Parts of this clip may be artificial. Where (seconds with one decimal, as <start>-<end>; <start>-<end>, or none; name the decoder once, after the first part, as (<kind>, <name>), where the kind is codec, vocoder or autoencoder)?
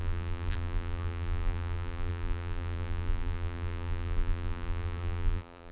0.0-5.7 (vocoder, BigVGAN v2)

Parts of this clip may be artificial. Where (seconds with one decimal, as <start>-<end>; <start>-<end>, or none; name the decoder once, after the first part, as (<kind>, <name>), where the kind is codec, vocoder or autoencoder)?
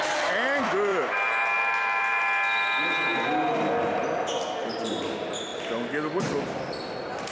0.9-2.2 (vocoder, BigVGAN v2)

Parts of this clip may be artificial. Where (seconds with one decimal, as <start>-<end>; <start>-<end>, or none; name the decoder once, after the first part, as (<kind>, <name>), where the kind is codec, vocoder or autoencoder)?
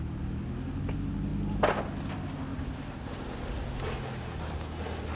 2.5-3.1 (vocoder, BigVGAN v2)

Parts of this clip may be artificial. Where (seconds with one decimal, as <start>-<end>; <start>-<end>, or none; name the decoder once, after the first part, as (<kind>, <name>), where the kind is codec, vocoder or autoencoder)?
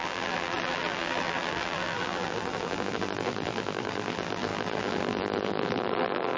0.0-6.4 (vocoder, BigVGAN v2)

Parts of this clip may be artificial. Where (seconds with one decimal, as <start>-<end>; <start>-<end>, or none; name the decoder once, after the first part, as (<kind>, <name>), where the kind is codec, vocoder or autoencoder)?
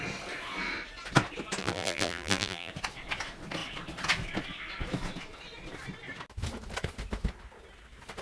1.6-2.7 (vocoder, BigVGAN v2)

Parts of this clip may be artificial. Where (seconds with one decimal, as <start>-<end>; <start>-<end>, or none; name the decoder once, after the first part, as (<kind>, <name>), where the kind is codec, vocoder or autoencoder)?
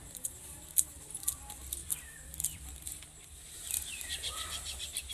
0.0-5.1 (vocoder, BigVGAN v2)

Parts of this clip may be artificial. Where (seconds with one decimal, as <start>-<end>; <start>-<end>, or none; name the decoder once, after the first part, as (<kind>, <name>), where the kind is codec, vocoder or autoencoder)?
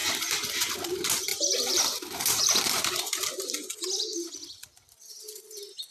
0.0-0.7 (vocoder, BigVGAN v2); 1.3-3.3